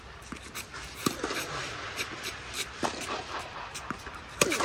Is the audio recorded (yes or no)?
no